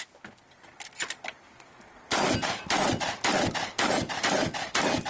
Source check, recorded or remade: recorded